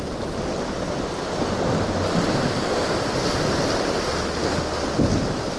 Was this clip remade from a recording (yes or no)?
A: no